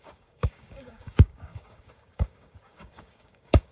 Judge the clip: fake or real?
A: fake